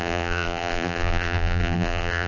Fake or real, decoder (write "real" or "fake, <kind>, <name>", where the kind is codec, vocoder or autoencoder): fake, vocoder, BigVGAN v2